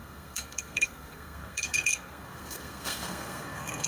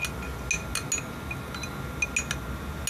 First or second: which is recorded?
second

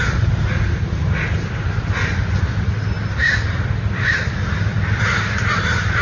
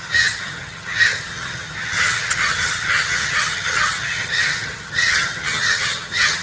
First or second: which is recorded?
first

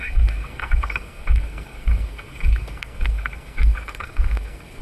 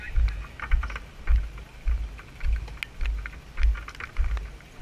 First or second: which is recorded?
second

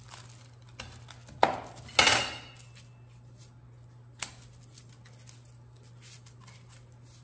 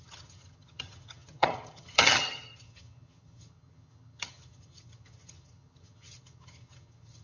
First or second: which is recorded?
first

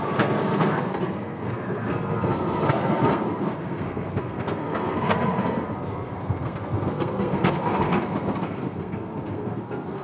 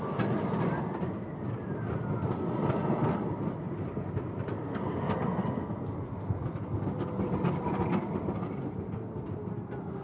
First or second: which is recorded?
second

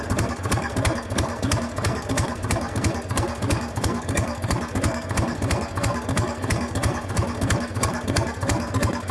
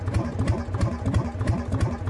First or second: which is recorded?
second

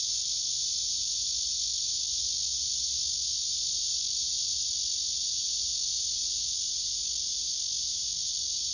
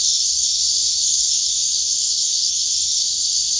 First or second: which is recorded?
first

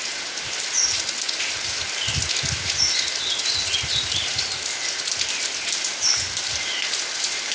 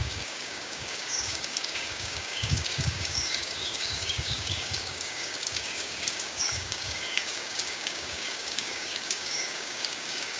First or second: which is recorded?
first